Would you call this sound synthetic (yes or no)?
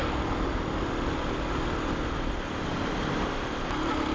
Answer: no